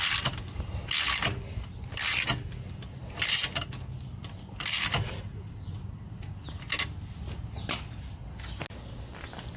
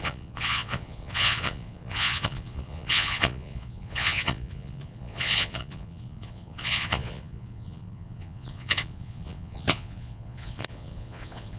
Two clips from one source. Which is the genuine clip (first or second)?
first